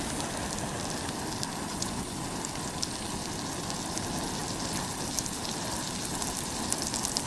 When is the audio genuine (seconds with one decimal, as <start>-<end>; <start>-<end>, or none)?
0.0-1.7; 2.2-7.3